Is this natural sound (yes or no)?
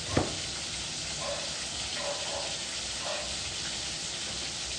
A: yes